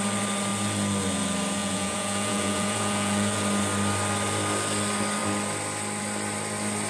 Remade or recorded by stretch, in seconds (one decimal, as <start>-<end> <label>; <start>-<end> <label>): 0.0-1.6 recorded; 1.6-3.4 remade; 3.4-6.9 recorded